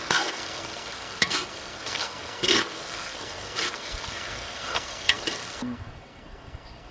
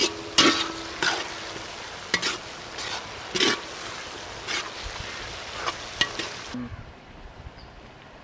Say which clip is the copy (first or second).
first